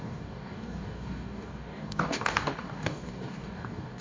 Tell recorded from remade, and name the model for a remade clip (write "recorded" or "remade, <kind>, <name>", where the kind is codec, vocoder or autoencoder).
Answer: remade, codec, DAC